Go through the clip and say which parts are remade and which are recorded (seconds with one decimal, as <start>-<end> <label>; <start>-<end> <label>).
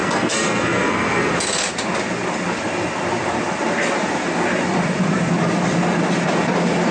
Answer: 0.0-1.3 remade; 1.3-6.9 recorded